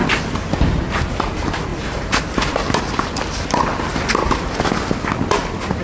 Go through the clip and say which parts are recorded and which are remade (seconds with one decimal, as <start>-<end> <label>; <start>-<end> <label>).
0.0-1.7 recorded; 1.7-2.8 remade; 2.8-5.8 recorded